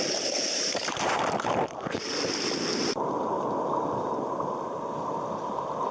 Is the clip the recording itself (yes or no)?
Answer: no